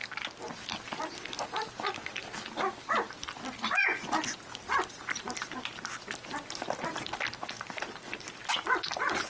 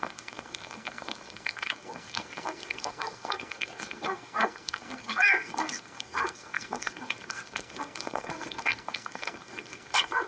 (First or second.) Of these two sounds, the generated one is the second